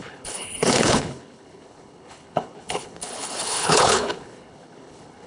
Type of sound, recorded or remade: remade